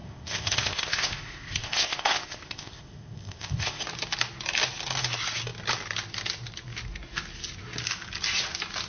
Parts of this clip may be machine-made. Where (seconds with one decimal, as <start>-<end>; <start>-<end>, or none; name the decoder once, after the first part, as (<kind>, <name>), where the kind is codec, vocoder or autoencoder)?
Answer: 0.0-3.8 (codec, ZipCodec)